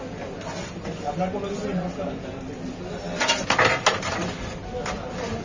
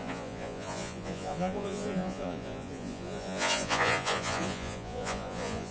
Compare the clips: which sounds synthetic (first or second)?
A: second